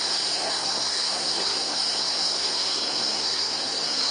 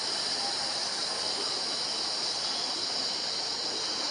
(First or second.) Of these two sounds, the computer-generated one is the first